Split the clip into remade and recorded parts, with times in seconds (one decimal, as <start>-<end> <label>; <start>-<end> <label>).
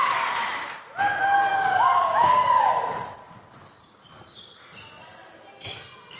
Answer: 0.0-1.5 recorded; 1.5-2.7 remade; 2.7-6.2 recorded